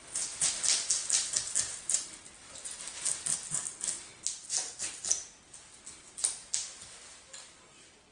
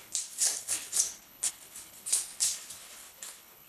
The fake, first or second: second